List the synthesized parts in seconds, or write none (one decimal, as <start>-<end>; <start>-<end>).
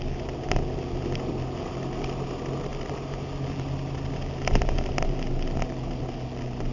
none